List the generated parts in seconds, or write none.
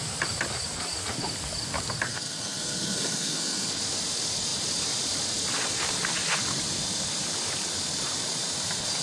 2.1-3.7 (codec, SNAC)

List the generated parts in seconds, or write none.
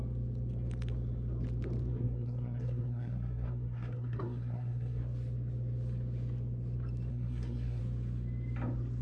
1.9-5.0 (codec, SNAC); 7.1-7.8